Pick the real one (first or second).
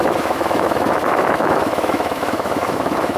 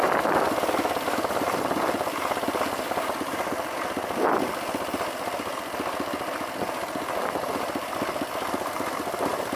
second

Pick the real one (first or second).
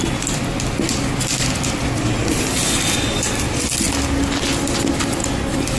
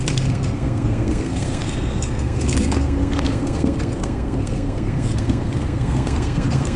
first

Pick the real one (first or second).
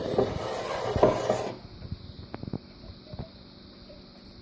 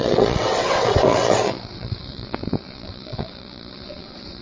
first